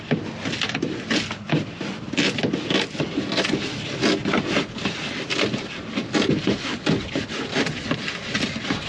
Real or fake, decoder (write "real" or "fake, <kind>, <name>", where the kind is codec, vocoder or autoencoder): real